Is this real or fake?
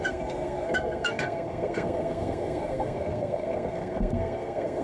fake